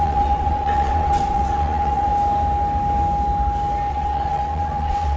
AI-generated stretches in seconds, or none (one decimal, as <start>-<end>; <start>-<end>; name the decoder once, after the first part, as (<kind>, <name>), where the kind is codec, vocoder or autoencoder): 0.0-2.1 (vocoder, WaveNeXt); 3.9-5.2